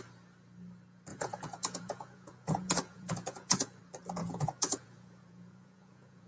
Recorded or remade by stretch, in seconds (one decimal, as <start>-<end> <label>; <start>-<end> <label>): 0.0-1.1 recorded; 1.1-3.8 remade; 3.8-4.2 recorded; 4.2-6.3 remade